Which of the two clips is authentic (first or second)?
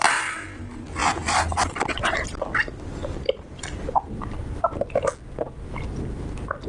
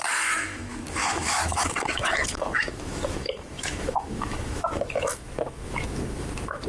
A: first